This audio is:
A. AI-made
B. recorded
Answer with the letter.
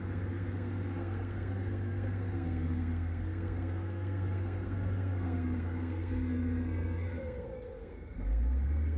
A